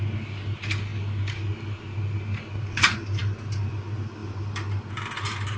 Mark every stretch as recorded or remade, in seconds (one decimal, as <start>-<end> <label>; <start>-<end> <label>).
0.0-4.2 recorded; 4.2-4.8 remade; 4.8-5.6 recorded